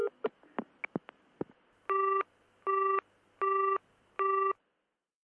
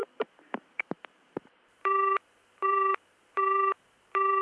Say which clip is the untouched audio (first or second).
first